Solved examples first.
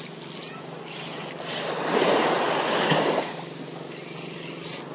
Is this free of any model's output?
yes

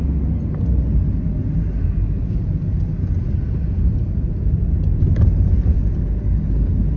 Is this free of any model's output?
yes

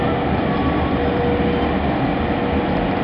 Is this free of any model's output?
yes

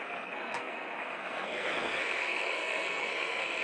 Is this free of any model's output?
no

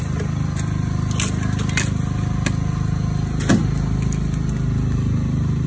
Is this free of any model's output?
yes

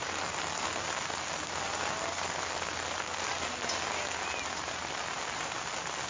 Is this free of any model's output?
yes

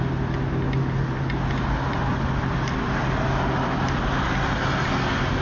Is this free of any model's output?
yes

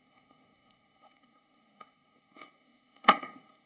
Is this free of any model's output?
no